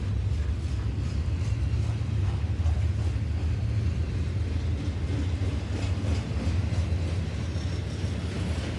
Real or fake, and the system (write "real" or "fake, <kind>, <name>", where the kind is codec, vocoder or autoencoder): real